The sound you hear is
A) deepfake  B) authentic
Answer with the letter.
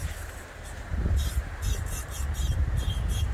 A